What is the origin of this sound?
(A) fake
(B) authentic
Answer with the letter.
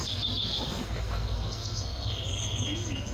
A